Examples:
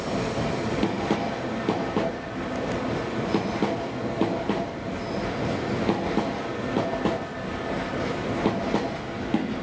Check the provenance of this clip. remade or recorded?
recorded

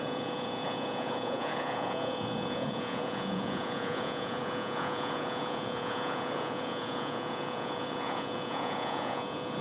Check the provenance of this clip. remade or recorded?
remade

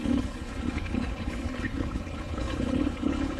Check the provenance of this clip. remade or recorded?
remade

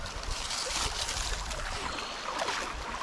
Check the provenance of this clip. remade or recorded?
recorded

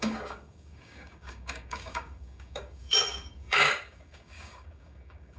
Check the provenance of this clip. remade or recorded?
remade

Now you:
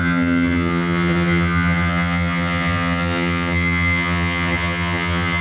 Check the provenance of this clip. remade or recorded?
remade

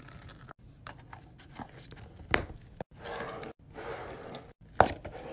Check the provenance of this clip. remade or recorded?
recorded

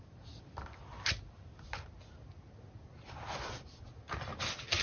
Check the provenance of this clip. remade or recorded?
recorded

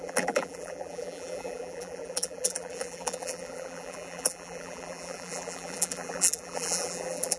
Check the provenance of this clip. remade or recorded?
remade